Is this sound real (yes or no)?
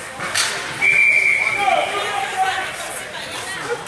yes